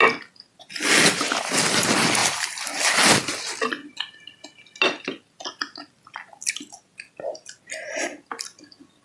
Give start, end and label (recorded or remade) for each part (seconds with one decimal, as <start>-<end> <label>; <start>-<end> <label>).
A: 0.0-9.0 recorded